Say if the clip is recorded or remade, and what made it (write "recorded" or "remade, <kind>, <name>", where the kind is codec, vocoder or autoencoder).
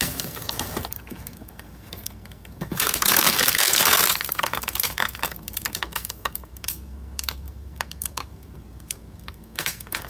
remade, codec, SNAC